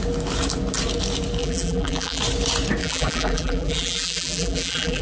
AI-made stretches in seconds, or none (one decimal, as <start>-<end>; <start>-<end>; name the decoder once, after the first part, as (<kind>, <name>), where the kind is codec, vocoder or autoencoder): 1.4-2.2 (vocoder, BigVGAN v2); 2.8-5.0

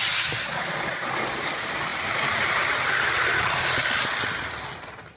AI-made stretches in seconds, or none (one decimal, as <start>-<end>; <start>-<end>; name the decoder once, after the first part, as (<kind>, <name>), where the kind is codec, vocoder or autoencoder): 1.9-3.3 (vocoder, BigVGAN v2)

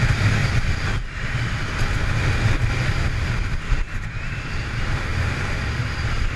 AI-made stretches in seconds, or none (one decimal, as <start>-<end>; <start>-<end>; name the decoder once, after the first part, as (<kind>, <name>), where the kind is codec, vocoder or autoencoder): none